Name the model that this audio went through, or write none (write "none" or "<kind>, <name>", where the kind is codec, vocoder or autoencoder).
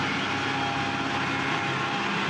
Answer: none